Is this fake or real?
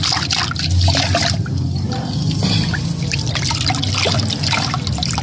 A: real